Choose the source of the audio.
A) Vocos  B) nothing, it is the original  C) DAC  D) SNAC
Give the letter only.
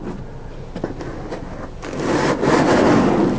B